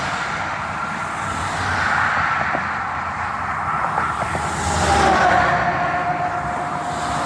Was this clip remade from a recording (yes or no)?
no